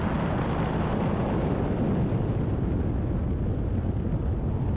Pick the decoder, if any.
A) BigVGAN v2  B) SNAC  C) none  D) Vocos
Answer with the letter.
C